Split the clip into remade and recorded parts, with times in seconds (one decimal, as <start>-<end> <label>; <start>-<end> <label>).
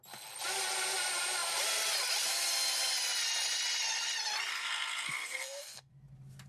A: 0.0-4.5 recorded; 4.5-5.9 remade; 5.9-6.5 recorded